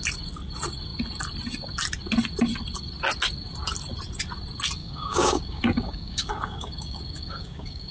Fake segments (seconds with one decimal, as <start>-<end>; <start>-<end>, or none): 4.8-7.9